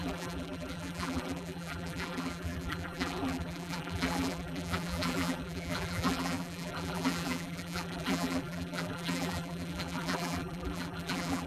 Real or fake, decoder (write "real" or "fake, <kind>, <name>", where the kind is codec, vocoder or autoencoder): fake, vocoder, BigVGAN v2